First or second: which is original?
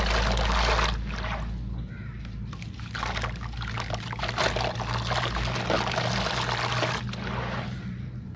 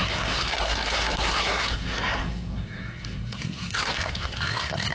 first